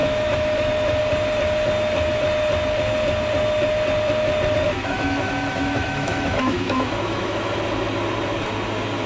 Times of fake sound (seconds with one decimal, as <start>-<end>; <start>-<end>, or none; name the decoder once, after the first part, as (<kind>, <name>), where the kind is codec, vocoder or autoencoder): 0.0-1.0 (autoencoder, DAC-VAE); 4.7-7.6